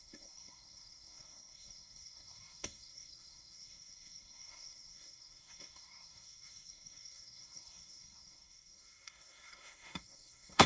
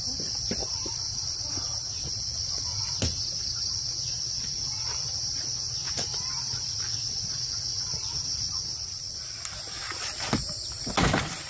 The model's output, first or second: first